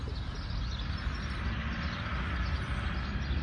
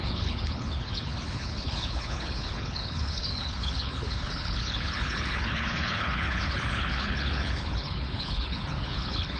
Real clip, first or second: first